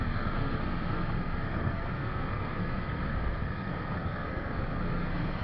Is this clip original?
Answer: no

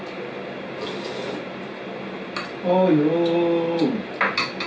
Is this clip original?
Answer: yes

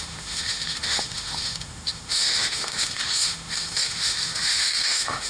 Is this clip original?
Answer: no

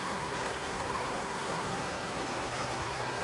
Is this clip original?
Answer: no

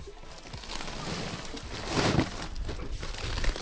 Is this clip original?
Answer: yes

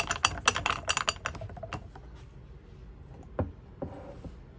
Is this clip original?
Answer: yes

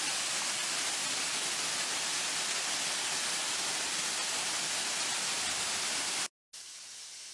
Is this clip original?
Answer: yes